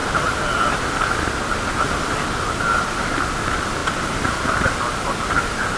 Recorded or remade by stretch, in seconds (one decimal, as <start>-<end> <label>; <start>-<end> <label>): 0.0-5.8 recorded